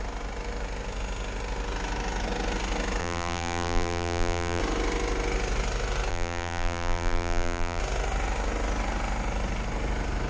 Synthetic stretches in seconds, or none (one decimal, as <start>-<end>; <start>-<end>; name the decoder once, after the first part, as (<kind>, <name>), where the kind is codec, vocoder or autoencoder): 3.0-4.6 (vocoder, BigVGAN v2); 6.1-7.8